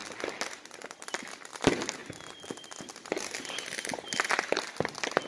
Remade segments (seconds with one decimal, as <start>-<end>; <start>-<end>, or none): none